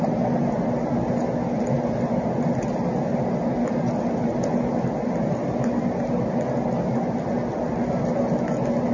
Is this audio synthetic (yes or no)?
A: no